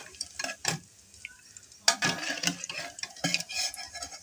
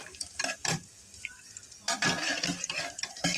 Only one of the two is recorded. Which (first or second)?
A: first